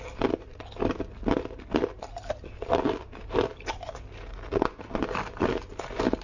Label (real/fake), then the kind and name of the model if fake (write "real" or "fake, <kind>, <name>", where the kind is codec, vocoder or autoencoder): real